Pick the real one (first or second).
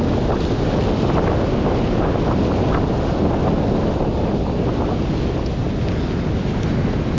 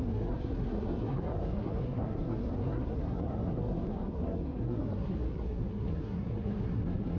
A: first